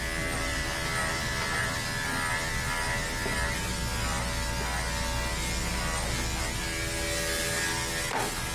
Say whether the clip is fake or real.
real